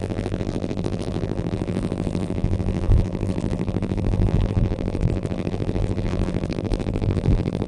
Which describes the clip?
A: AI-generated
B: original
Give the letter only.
A